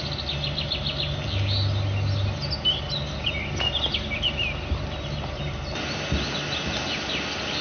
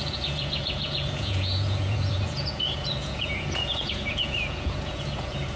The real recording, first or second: first